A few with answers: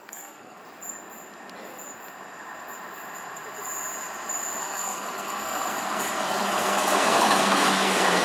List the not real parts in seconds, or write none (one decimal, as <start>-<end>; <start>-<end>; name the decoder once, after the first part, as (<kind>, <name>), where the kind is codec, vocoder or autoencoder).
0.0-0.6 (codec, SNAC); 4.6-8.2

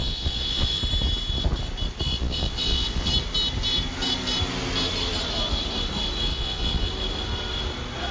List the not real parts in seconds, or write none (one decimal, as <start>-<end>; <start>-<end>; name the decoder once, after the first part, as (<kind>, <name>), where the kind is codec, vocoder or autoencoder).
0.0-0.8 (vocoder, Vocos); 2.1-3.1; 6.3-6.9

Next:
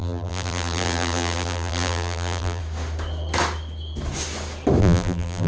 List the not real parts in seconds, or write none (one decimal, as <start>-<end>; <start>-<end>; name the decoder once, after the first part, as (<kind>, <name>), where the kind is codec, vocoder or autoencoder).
0.0-2.6 (vocoder, BigVGAN v2); 4.8-5.5